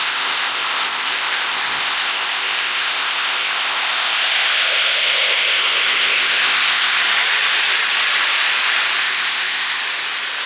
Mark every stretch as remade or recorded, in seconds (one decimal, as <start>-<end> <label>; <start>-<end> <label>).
0.0-7.0 remade; 7.0-9.0 recorded; 9.0-9.8 remade; 9.8-10.5 recorded